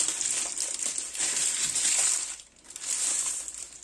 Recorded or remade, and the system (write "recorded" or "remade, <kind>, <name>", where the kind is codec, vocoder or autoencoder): recorded